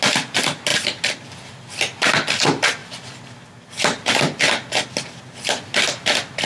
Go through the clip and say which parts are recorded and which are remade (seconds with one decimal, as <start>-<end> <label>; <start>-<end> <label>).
0.0-6.5 recorded